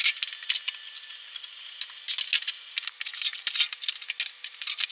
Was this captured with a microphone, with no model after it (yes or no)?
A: yes